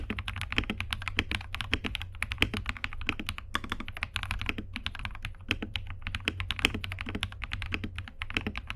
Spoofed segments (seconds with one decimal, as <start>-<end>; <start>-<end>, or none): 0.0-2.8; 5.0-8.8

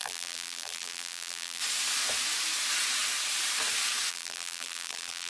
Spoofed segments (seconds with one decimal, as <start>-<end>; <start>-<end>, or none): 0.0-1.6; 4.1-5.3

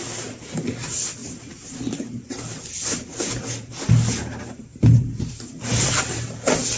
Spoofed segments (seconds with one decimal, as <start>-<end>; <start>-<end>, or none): 1.2-2.7; 4.7-5.3

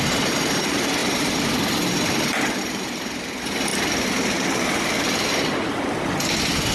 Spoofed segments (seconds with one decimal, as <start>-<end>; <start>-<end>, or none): 0.0-1.0; 2.6-3.7